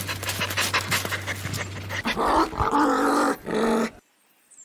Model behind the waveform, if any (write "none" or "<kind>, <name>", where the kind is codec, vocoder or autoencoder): none